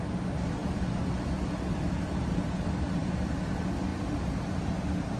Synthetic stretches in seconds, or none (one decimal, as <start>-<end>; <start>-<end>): none

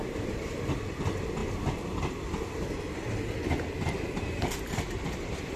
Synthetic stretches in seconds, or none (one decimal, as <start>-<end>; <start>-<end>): 0.0-1.4; 4.8-5.6

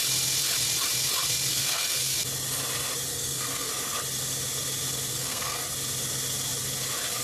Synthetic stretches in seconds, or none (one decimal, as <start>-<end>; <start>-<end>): 1.5-2.2; 3.1-3.7; 5.1-5.6

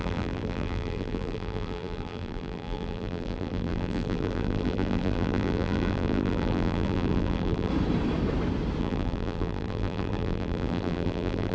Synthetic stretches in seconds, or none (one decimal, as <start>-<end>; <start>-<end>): 0.0-7.7; 8.8-11.5

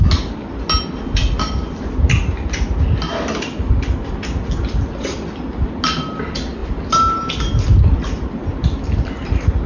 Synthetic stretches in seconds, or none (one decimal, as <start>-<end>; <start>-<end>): none